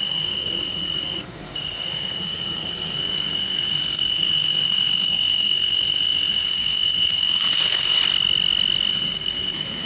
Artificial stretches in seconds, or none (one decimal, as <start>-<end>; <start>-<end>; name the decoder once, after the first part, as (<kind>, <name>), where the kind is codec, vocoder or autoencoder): 0.0-8.0 (codec, SNAC); 8.9-9.9